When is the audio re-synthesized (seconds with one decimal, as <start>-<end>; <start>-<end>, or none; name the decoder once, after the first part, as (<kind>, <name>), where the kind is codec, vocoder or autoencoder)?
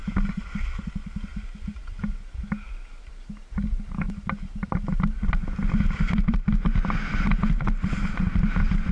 0.0-0.6 (vocoder, BigVGAN v2)